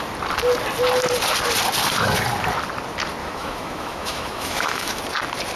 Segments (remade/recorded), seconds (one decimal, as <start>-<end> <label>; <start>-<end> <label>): 0.0-3.2 recorded; 3.2-5.0 remade; 5.0-5.6 recorded